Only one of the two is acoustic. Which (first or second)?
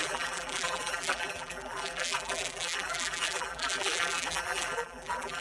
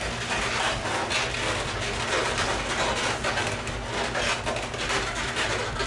second